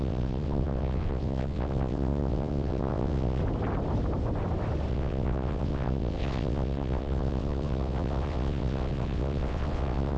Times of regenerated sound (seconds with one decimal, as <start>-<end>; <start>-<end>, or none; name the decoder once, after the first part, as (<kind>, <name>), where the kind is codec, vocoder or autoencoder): 0.0-3.4 (vocoder, WaveNeXt); 4.9-10.2